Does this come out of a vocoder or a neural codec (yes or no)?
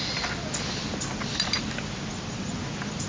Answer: yes